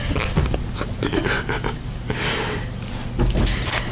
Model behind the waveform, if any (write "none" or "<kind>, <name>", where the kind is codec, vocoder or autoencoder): none